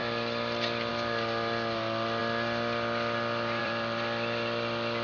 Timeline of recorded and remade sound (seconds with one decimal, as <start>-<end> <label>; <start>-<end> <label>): 0.0-2.2 remade; 2.2-3.6 recorded; 3.6-5.0 remade